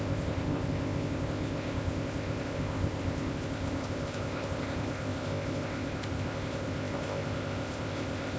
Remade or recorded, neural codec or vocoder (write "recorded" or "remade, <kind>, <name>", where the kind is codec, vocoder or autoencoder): remade, codec, ZipCodec